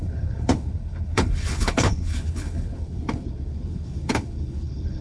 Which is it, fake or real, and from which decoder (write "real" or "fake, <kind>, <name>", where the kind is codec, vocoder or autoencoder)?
fake, codec, HILCodec